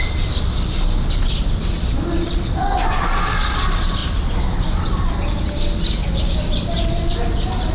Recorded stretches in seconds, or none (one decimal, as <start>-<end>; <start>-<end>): 0.0-7.7